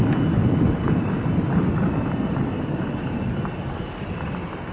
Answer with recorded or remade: recorded